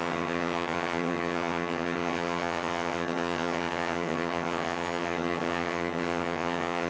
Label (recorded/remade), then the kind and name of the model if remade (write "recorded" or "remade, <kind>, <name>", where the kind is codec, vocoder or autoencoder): remade, vocoder, HiFi-GAN